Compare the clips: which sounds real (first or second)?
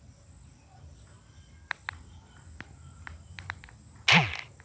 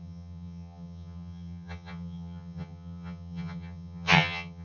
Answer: first